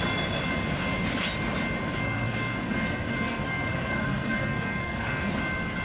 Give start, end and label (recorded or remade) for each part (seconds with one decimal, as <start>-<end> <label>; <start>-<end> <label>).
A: 0.0-1.8 recorded; 1.8-5.3 remade; 5.3-5.8 recorded